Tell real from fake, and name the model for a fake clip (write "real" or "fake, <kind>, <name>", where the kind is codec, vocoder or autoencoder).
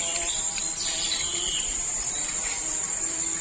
fake, vocoder, BigVGAN v2